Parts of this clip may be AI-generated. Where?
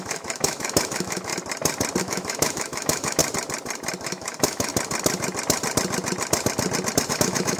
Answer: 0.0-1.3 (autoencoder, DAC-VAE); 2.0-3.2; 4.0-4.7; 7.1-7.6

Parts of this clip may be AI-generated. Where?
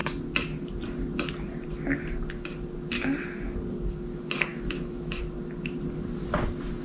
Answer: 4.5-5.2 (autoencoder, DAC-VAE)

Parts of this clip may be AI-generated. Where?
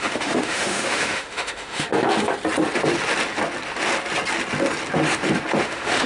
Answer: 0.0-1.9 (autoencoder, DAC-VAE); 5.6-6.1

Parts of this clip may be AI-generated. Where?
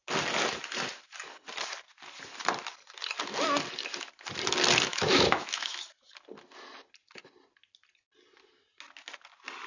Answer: 4.9-5.8 (autoencoder, DAC-VAE)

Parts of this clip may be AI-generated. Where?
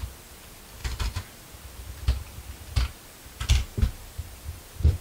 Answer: none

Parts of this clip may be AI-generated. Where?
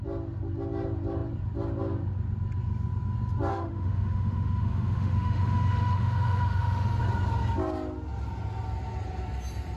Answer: 3.5-7.0 (autoencoder, DAC-VAE)